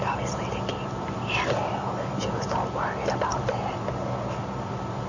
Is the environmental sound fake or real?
real